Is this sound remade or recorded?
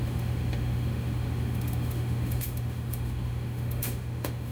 remade